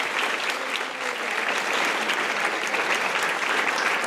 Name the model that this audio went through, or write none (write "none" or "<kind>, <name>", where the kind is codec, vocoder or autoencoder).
none